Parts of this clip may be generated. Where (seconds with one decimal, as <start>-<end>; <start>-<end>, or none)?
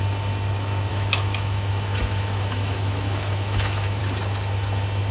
0.9-4.0